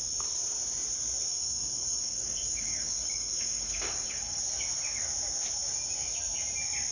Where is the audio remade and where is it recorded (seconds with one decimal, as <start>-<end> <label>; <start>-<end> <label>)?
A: 0.0-1.3 recorded; 1.3-4.4 remade; 4.4-6.9 recorded

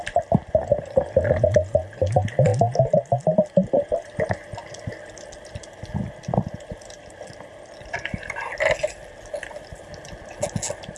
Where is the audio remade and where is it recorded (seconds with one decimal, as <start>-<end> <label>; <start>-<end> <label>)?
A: 0.0-11.0 recorded

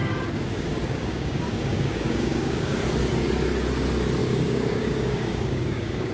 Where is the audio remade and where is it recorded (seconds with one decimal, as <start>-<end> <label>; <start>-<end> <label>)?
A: 0.0-2.8 remade; 2.8-4.2 recorded; 4.2-6.1 remade

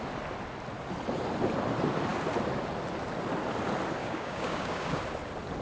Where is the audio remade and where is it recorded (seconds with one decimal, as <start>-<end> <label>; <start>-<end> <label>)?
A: 0.0-4.0 recorded; 4.0-5.0 remade; 5.0-5.6 recorded

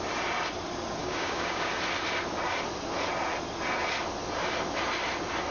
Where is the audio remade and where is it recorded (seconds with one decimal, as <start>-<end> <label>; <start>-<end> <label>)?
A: 0.0-1.0 recorded; 1.0-1.7 remade; 1.7-5.5 recorded

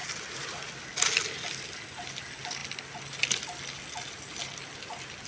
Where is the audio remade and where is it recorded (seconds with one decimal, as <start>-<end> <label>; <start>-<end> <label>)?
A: 0.0-5.3 recorded

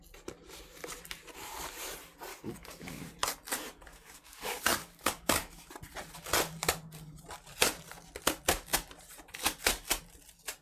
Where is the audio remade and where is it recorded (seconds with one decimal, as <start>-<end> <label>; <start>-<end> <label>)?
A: 0.0-2.3 recorded; 2.3-3.0 remade; 3.0-3.9 recorded; 3.9-5.7 remade; 5.7-10.6 recorded

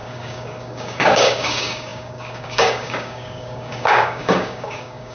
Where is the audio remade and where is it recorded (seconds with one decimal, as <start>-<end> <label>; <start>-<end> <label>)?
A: 0.0-5.1 remade